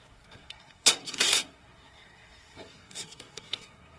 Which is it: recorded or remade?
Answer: remade